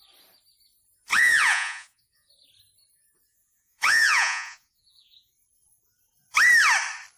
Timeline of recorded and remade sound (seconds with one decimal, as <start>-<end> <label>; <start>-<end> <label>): 0.0-1.1 recorded; 1.1-2.3 remade; 2.3-3.3 recorded; 3.3-5.3 remade; 5.3-7.2 recorded